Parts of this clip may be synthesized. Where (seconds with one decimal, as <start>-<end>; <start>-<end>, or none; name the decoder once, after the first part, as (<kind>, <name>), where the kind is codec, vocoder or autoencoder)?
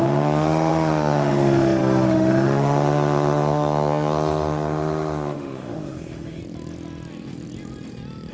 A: 0.0-6.4 (autoencoder, DAC-VAE)